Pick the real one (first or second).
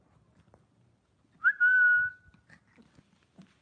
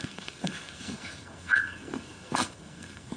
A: first